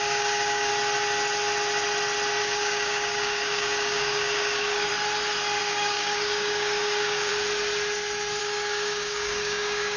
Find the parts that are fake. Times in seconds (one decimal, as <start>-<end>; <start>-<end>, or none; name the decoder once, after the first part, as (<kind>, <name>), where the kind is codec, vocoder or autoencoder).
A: 0.0-0.7 (codec, DAC); 2.4-4.9; 5.6-7.3; 8.4-10.0